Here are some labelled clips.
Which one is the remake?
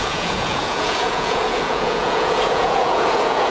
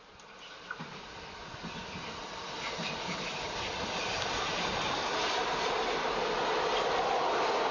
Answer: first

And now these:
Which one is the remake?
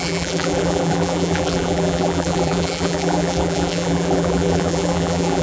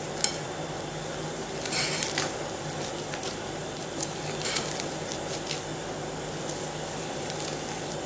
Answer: first